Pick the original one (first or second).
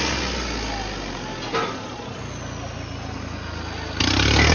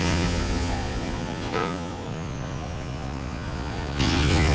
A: first